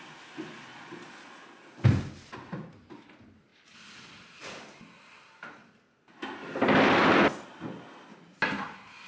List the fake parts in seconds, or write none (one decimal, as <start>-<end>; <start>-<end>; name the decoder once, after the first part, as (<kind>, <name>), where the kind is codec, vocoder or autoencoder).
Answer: 0.7-1.3 (vocoder, Vocos)